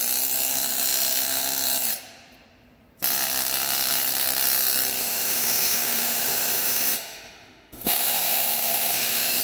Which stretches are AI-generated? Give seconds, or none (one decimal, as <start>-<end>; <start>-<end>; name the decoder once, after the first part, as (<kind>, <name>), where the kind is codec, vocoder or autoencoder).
5.0-9.4 (autoencoder, DAC-VAE)